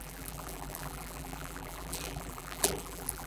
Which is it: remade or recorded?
remade